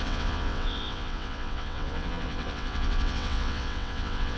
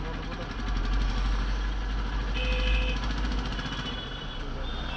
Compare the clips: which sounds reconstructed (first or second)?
first